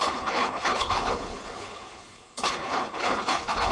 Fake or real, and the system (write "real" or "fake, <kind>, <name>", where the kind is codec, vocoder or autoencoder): fake, codec, HILCodec